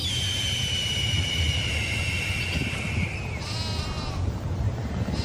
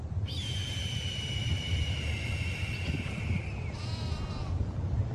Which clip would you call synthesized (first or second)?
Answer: second